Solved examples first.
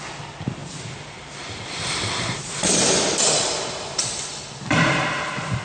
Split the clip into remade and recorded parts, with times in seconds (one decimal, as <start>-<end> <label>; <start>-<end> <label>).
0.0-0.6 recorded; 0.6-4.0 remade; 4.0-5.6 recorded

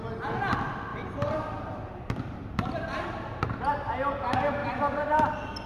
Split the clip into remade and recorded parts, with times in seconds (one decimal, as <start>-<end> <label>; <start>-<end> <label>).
0.0-0.9 recorded; 0.9-3.7 remade; 3.7-4.6 recorded; 4.6-5.3 remade; 5.3-5.7 recorded

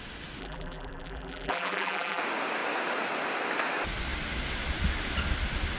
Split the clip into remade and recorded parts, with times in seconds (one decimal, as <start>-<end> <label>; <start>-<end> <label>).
0.0-0.4 recorded; 0.4-2.2 remade; 2.2-5.8 recorded